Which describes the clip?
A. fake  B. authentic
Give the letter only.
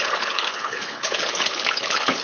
A